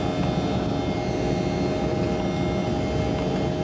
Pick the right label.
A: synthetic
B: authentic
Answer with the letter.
B